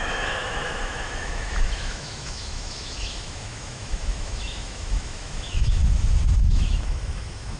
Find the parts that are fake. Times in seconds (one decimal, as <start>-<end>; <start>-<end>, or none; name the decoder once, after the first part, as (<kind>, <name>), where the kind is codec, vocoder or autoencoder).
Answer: 0.0-5.8 (autoencoder, DAC-VAE); 6.4-7.6